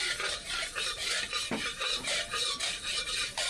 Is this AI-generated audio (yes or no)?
yes